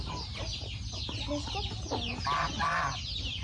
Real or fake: real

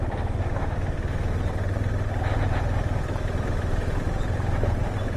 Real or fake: real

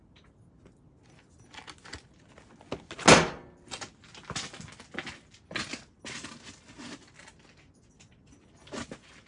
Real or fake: real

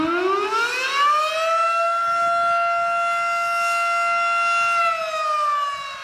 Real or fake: real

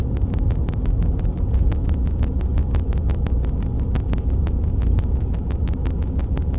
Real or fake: real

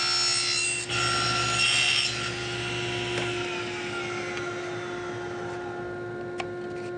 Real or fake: real